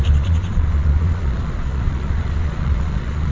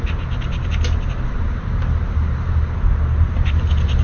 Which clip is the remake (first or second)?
first